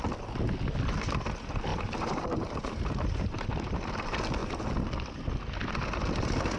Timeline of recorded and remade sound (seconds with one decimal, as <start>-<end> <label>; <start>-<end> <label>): 0.0-1.7 recorded; 1.7-3.9 remade; 3.9-6.6 recorded